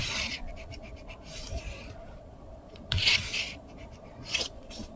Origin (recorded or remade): remade